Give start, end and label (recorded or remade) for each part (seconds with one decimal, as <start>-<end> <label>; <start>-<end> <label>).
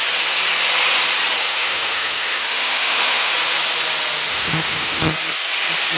0.0-1.4 recorded; 1.4-3.3 remade; 3.3-4.3 recorded; 4.3-5.0 remade; 5.0-6.0 recorded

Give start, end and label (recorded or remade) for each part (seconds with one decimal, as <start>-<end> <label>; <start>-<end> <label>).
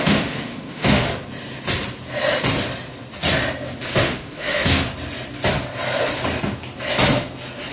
0.0-1.1 remade; 1.1-4.0 recorded; 4.0-4.9 remade; 4.9-7.7 recorded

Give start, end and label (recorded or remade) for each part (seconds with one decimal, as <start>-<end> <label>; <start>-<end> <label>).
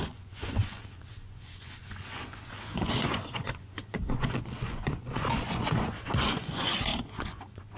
0.0-7.8 remade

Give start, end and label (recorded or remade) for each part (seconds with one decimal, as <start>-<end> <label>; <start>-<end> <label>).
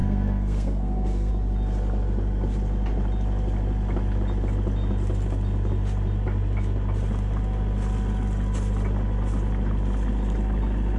0.0-1.3 remade; 1.3-11.0 recorded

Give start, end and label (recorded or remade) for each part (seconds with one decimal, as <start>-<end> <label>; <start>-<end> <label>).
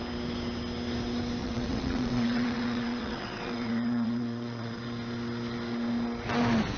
0.0-1.4 recorded; 1.4-4.8 remade; 4.8-6.8 recorded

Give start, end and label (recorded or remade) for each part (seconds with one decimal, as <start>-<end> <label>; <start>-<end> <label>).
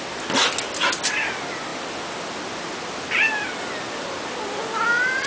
0.0-5.3 recorded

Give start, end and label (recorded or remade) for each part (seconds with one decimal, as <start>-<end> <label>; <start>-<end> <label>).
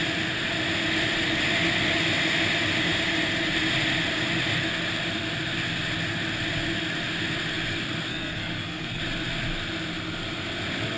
0.0-8.1 recorded; 8.1-9.0 remade; 9.0-11.0 recorded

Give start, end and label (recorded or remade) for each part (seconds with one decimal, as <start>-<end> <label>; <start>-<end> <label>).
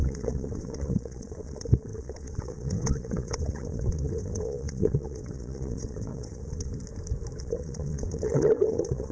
0.0-6.7 remade; 6.7-7.4 recorded; 7.4-9.1 remade